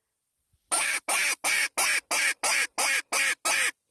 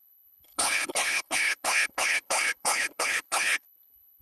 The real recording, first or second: first